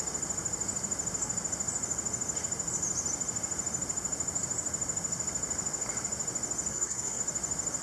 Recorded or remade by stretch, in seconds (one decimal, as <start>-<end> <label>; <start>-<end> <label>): 0.0-6.7 recorded; 6.7-7.2 remade; 7.2-7.8 recorded